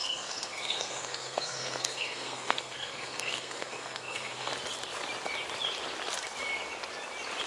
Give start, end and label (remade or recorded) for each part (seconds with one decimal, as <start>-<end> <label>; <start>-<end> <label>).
0.0-4.5 remade; 4.5-7.5 recorded